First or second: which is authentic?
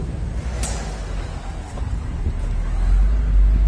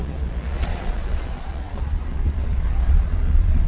first